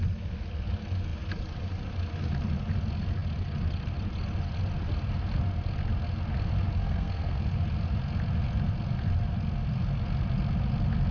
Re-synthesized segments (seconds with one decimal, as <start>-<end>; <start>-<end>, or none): 6.8-7.4